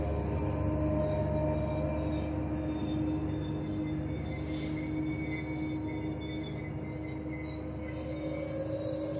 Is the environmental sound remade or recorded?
recorded